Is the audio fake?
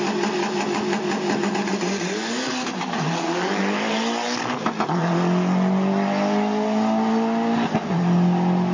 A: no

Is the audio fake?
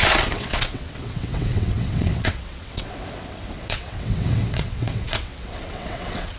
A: yes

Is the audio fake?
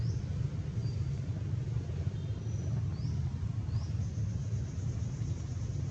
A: no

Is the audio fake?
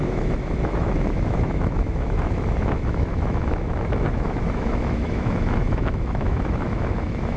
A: yes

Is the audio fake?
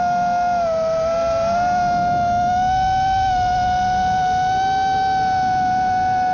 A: no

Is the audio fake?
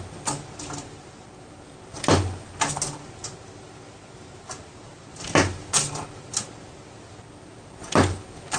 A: no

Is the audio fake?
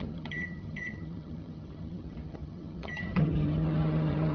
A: yes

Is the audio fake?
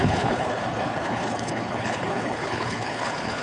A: yes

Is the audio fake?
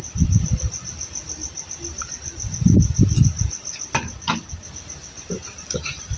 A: no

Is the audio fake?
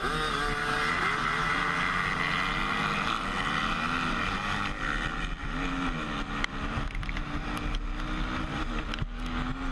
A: no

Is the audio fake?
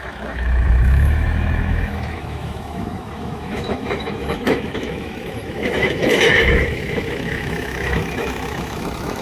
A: yes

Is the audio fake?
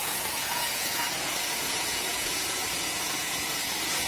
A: yes